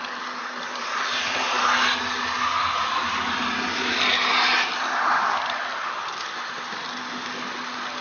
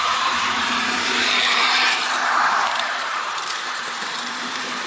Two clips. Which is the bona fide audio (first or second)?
first